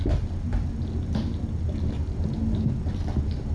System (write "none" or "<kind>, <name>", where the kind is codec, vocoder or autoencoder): none